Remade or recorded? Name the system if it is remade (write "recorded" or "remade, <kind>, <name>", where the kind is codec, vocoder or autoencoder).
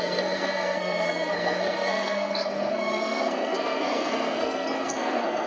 remade, codec, SNAC